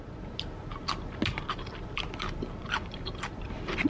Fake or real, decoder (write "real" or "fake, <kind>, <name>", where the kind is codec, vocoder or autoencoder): real